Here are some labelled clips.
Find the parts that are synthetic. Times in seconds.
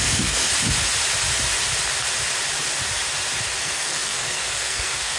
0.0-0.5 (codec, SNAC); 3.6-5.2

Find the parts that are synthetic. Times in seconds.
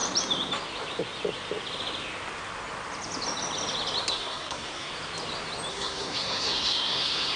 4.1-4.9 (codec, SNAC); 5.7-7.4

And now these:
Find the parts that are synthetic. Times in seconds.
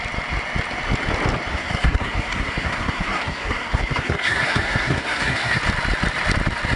1.5-5.6 (codec, SNAC)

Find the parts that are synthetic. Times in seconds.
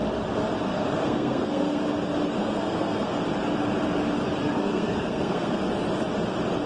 0.7-1.8 (codec, SNAC); 2.4-3.1; 4.4-5.6